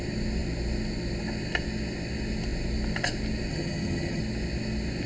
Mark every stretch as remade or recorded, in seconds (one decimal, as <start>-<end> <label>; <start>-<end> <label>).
0.0-3.5 recorded; 3.5-4.2 remade; 4.2-5.1 recorded